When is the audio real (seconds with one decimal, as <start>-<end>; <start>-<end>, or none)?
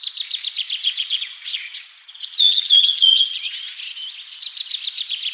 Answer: 0.0-0.8; 3.5-5.3